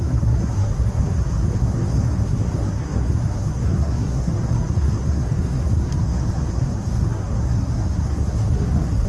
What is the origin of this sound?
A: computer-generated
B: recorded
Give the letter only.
A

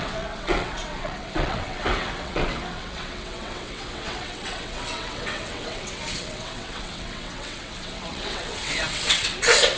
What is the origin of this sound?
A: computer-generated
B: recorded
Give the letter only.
A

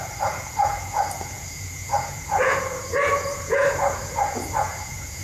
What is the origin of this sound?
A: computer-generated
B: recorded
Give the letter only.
A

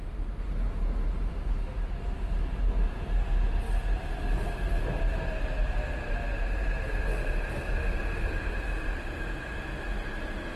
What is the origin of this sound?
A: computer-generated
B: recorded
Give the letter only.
B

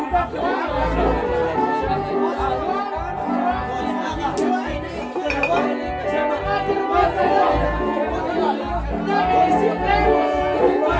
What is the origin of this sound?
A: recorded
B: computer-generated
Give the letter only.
A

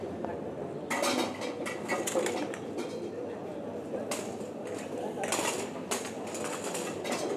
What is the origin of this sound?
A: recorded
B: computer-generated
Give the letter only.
A